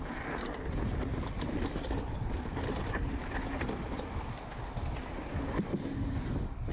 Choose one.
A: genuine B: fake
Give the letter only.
A